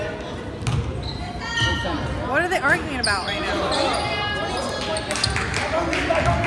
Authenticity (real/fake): real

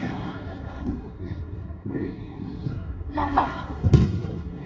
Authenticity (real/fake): fake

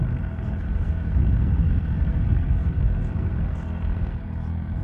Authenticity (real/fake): fake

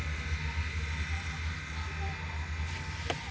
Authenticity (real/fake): real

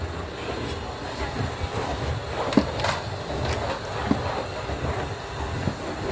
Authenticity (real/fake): real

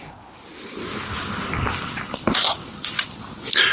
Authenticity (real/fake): real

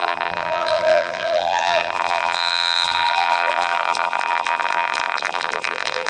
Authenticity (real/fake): fake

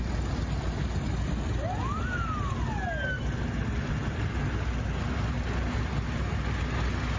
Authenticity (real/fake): real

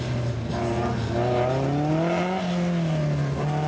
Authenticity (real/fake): real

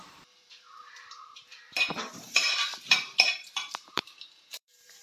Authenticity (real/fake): fake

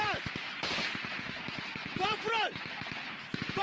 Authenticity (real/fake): real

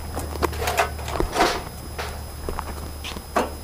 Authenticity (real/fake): real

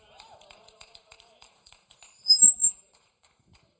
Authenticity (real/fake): fake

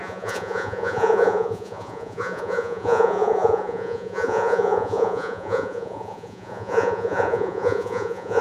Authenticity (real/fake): fake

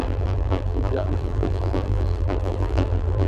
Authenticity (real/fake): fake